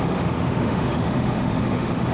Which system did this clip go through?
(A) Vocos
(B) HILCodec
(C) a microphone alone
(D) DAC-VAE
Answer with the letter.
D